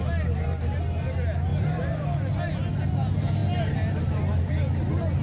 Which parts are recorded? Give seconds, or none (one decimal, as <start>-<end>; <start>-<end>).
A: 0.0-5.2